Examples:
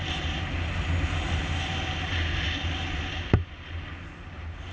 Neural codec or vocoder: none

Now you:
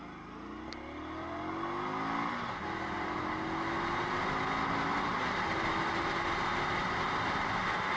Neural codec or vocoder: none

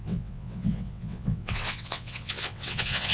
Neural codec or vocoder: vocoder, WaveNeXt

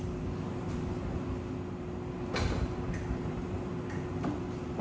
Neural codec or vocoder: none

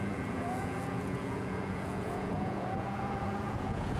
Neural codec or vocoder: vocoder, Vocos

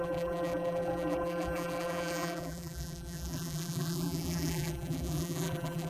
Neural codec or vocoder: vocoder, BigVGAN v2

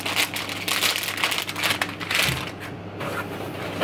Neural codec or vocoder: none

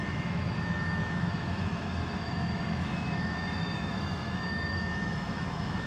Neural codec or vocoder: autoencoder, DAC-VAE